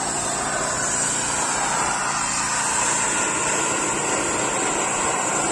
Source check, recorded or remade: recorded